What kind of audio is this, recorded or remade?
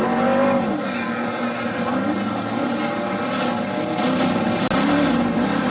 recorded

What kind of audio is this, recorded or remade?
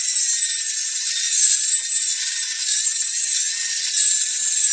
recorded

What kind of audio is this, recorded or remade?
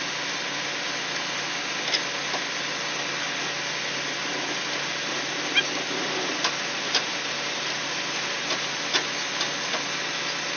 recorded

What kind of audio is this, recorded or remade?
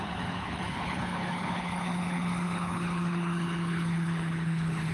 remade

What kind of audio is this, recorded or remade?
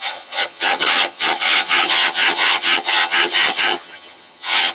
remade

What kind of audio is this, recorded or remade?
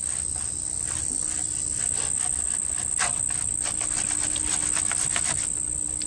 recorded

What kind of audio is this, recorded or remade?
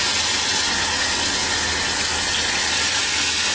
recorded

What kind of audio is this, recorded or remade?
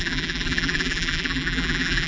remade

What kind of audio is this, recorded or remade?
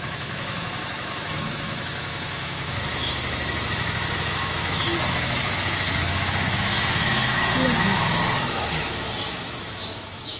remade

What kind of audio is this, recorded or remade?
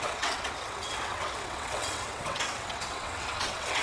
remade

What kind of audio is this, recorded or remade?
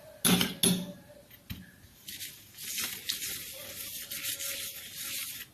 recorded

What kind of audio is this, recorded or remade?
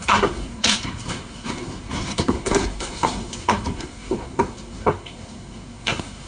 remade